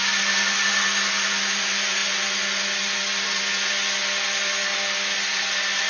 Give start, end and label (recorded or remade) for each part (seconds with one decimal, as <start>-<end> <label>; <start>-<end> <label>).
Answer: 0.0-5.9 recorded